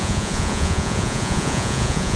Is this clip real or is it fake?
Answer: fake